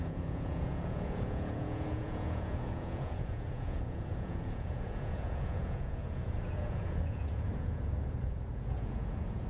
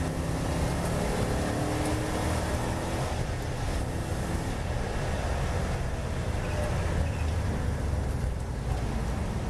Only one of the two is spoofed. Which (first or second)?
first